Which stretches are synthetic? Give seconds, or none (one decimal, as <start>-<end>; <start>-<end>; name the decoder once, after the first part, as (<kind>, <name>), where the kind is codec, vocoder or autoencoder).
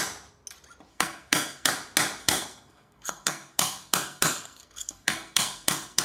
0.9-1.7 (codec, SNAC); 2.2-6.0